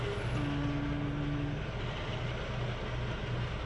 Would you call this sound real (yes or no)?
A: yes